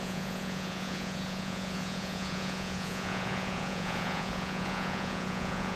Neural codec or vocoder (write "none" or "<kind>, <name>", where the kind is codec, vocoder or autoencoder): vocoder, Vocos